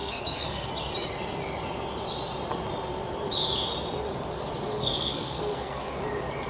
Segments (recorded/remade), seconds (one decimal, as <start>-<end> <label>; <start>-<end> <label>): 0.0-0.7 remade; 0.7-4.8 recorded; 4.8-6.0 remade; 6.0-6.5 recorded